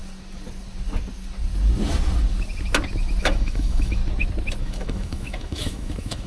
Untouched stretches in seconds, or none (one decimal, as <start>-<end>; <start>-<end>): 0.0-3.2; 4.0-4.6